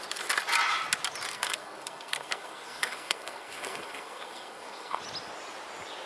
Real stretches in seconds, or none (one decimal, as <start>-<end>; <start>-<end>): 0.0-1.3; 5.0-6.1